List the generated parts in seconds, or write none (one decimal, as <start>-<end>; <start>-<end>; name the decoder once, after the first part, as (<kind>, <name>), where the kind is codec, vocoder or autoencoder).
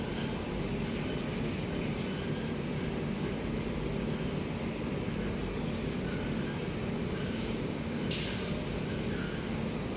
7.0-8.0 (codec, DAC)